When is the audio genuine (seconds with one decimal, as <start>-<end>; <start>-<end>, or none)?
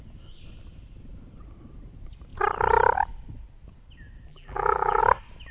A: 0.0-4.3; 5.0-5.5